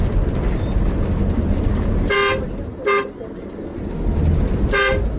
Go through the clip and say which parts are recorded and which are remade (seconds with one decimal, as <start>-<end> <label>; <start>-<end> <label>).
0.0-5.2 recorded